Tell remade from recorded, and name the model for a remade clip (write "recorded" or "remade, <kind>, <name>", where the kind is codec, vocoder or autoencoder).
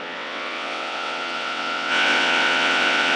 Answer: remade, vocoder, WaveNeXt